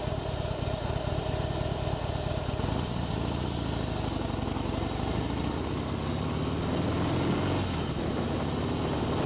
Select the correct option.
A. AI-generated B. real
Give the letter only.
B